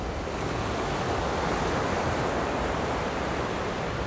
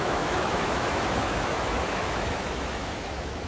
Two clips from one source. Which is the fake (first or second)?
second